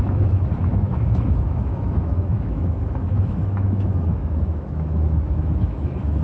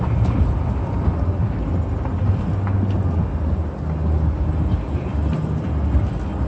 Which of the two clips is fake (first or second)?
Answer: first